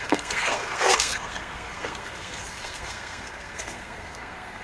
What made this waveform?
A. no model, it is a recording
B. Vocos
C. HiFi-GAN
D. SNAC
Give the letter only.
D